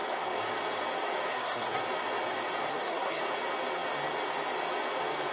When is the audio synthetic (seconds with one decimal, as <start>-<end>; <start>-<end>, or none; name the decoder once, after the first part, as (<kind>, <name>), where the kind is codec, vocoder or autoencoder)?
1.3-1.8 (codec, SNAC); 2.7-3.2